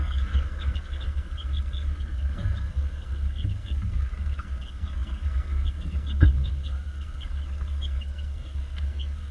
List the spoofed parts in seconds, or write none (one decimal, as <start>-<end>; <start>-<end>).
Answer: 0.0-9.3